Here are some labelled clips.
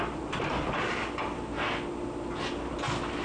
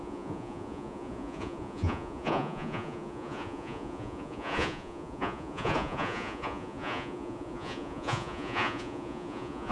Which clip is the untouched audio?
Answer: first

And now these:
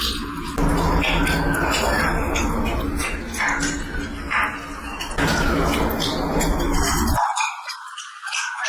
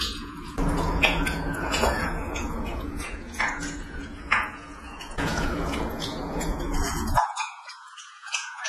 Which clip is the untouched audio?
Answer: first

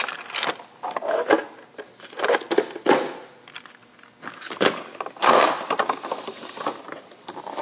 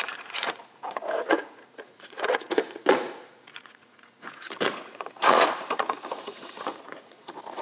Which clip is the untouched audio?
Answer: first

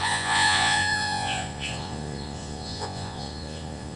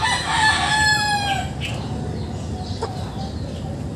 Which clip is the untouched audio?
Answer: second